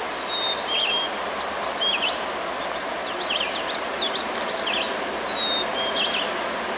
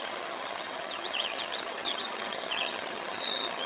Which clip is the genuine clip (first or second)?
first